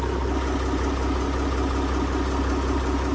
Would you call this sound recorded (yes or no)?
yes